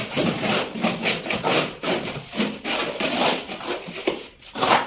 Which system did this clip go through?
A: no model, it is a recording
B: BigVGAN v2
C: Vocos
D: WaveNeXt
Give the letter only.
A